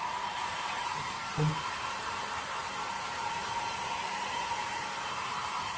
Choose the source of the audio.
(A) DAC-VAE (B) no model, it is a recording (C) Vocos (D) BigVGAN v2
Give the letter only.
D